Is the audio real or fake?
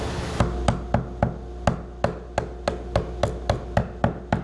real